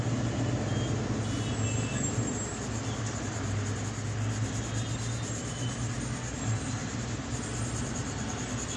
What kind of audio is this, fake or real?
real